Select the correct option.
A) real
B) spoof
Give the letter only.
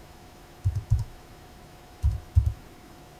B